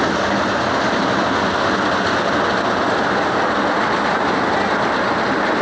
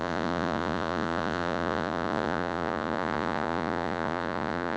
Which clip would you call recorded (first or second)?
first